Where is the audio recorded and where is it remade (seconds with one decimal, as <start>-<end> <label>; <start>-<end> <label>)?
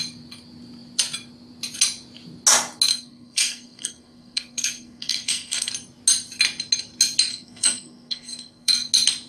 0.0-2.9 recorded; 2.9-5.7 remade; 5.7-7.3 recorded; 7.3-8.9 remade; 8.9-9.3 recorded